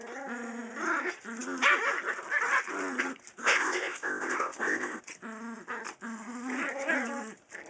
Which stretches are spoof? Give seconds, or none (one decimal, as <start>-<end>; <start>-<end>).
3.4-5.0